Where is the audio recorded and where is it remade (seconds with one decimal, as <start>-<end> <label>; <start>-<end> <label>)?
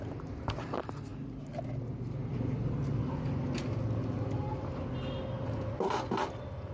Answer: 0.0-6.7 recorded